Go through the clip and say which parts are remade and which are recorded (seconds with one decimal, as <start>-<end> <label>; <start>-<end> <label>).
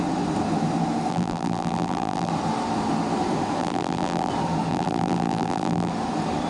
0.0-1.1 recorded; 1.1-2.3 remade; 2.3-3.6 recorded; 3.6-4.3 remade; 4.3-4.7 recorded; 4.7-5.9 remade; 5.9-6.5 recorded